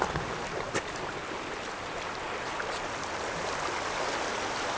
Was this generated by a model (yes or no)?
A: no